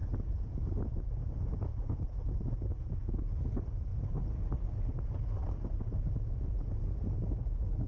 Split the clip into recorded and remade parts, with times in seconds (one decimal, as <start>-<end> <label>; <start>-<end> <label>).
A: 0.0-3.5 remade; 3.5-5.4 recorded; 5.4-6.5 remade; 6.5-7.9 recorded